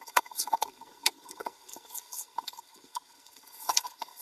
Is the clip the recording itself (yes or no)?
no